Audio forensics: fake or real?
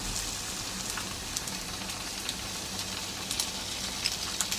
real